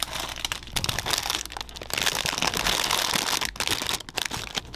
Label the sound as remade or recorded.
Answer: recorded